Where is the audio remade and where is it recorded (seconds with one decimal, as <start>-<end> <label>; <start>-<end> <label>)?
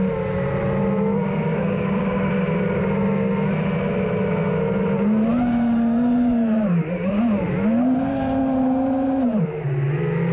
0.0-1.5 recorded; 1.5-2.3 remade; 2.3-10.3 recorded